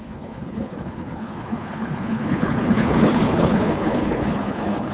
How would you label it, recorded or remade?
remade